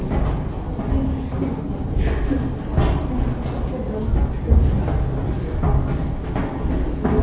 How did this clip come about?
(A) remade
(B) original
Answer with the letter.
B